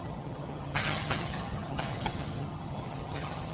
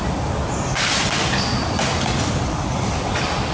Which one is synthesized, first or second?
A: first